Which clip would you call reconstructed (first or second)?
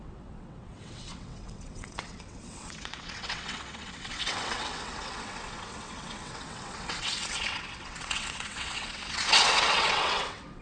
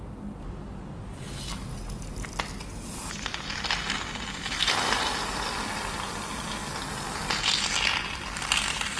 first